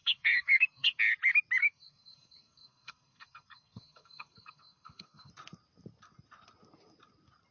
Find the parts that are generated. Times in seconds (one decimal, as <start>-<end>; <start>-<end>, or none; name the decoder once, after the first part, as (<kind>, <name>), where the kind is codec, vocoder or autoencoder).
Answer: 0.0-1.0 (codec, SNAC); 1.6-5.3